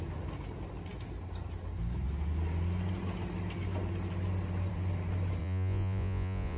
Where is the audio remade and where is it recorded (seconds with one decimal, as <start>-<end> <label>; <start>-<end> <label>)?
0.0-5.4 recorded; 5.4-6.6 remade